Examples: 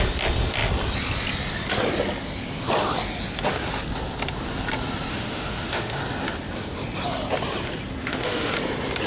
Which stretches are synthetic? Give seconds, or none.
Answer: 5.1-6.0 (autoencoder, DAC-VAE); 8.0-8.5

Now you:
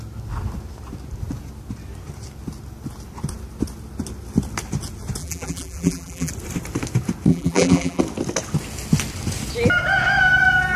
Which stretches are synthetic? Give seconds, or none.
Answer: 5.2-6.3 (vocoder, BigVGAN v2); 7.3-8.0

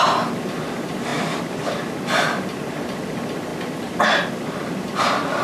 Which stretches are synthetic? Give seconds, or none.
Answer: 1.1-1.8 (vocoder, BigVGAN v2)

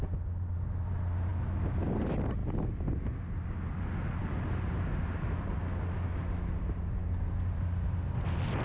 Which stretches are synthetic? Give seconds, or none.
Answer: none

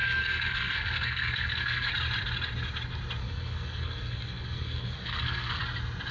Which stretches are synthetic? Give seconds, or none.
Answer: 0.0-1.9 (codec, SNAC); 3.2-5.6